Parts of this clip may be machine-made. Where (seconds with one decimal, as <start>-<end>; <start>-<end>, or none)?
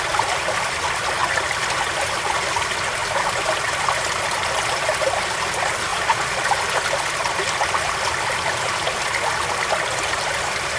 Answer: 5.9-6.5